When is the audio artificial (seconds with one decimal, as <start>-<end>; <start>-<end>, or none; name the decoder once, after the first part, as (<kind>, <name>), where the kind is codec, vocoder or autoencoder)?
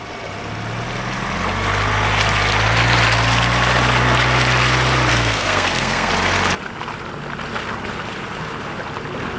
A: 5.1-6.1 (codec, SNAC)